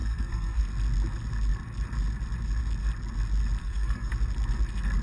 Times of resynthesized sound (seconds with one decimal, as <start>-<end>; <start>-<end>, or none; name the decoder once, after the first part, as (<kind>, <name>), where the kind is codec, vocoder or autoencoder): 0.0-0.6 (codec, SNAC); 3.6-4.1